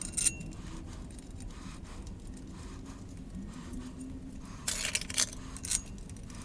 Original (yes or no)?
yes